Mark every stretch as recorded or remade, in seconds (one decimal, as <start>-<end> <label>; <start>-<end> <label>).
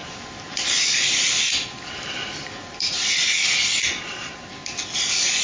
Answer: 0.0-5.4 recorded